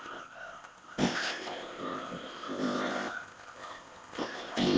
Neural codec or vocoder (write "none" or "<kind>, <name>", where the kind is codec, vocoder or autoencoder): codec, ZipCodec